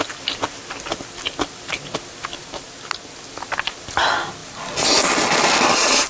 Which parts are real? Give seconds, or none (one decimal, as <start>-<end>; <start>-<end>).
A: 0.0-6.1